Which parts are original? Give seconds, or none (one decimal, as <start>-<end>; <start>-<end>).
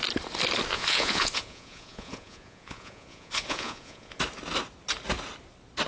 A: 0.0-0.7; 4.2-5.9